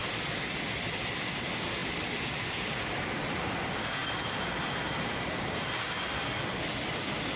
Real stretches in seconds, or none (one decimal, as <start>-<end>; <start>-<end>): 0.0-1.8; 3.4-4.0